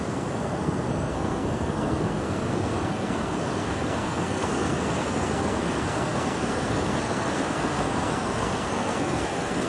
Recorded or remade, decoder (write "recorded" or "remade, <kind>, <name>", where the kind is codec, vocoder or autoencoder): remade, codec, SNAC